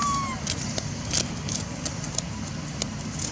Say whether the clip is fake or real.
real